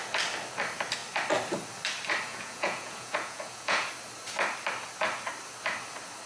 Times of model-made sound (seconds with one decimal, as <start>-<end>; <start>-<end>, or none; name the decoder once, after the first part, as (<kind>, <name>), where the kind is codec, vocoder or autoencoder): 2.3-3.9 (vocoder, Vocos)